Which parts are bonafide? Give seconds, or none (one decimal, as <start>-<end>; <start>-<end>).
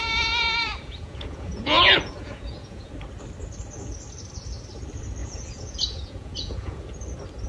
2.9-5.2; 6.8-7.5